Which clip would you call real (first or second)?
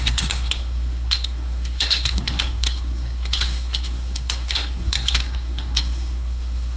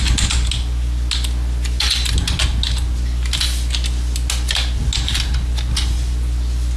second